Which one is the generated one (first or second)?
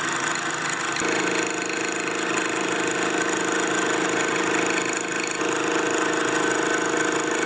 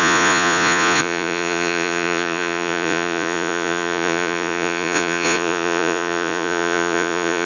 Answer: second